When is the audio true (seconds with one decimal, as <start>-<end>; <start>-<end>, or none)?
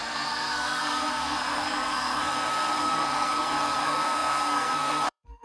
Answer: none